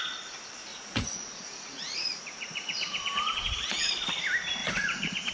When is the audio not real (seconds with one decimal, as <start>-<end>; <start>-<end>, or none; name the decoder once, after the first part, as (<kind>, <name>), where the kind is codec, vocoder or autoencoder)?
0.7-3.9 (vocoder, Vocos); 4.6-5.3